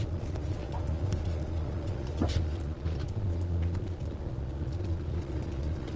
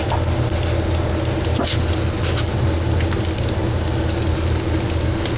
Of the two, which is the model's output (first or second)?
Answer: first